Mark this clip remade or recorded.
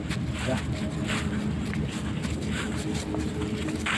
recorded